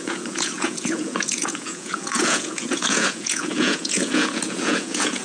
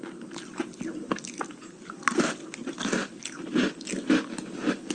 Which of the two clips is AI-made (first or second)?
first